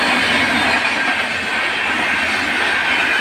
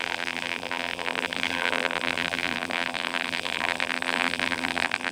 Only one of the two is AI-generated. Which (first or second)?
second